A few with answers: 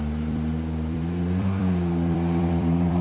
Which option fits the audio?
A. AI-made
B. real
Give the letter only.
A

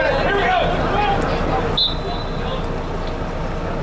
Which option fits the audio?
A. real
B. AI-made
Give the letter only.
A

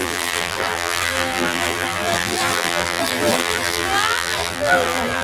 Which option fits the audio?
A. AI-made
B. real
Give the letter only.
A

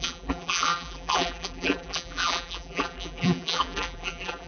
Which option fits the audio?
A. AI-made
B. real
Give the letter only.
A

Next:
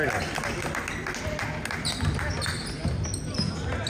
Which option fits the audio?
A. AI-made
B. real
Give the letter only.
B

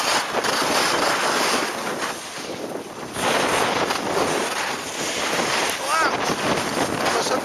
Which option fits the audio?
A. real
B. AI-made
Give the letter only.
A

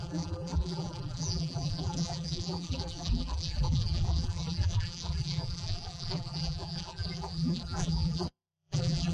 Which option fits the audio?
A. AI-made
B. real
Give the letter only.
A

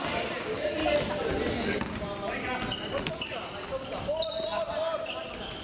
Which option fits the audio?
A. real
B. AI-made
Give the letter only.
A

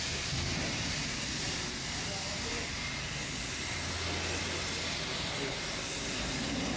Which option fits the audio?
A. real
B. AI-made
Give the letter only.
A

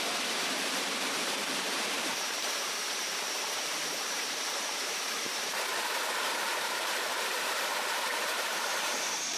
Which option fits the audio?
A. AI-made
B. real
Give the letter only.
A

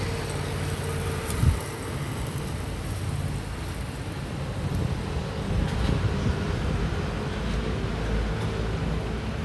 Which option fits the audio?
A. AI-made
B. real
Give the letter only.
B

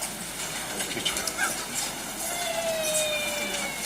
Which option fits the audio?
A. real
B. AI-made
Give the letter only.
A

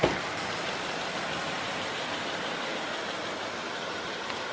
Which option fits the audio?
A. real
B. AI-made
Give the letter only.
B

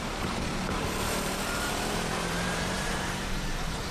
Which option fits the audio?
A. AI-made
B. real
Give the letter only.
A